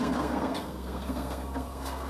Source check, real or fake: fake